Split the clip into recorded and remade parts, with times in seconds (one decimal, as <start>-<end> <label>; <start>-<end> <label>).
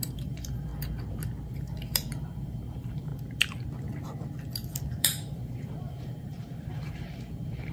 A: 0.0-0.7 remade; 0.7-1.5 recorded; 1.5-3.1 remade; 3.1-5.0 recorded; 5.0-7.7 remade